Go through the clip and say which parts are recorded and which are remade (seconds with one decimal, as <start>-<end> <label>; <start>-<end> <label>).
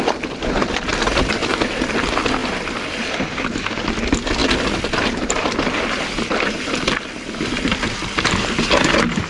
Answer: 0.0-0.9 recorded; 0.9-1.7 remade; 1.7-2.4 recorded; 2.4-3.6 remade; 3.6-4.4 recorded; 4.4-6.5 remade; 6.5-9.3 recorded